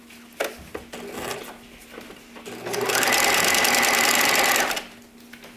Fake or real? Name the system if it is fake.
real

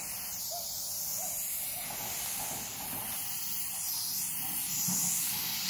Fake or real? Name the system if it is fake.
real